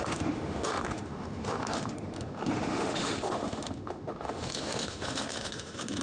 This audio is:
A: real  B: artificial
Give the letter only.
B